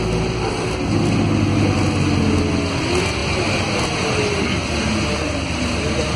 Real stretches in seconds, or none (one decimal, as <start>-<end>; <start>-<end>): 0.0-6.2

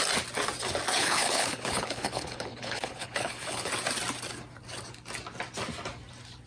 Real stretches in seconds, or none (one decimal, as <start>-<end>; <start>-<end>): 0.0-0.9; 3.7-6.5

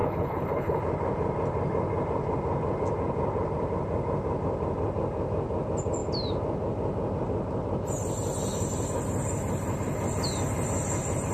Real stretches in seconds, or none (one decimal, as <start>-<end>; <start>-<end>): 0.8-11.3

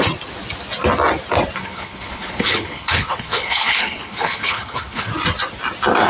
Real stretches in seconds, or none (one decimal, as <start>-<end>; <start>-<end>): 0.0-1.6; 5.1-6.1

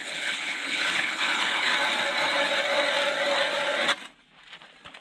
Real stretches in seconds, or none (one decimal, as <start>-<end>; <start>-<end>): 1.7-5.0

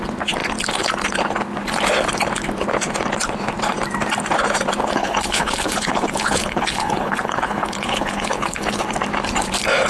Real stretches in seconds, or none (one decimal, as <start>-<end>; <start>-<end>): 0.0-4.8; 8.8-9.9